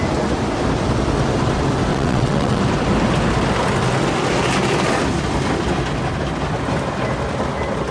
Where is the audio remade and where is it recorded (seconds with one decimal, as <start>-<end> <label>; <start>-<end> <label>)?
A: 0.0-1.9 recorded; 1.9-2.6 remade; 2.6-7.9 recorded